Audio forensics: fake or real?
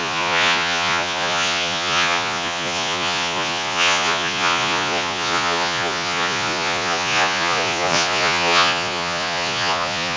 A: fake